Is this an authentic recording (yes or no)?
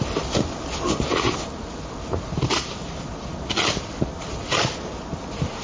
yes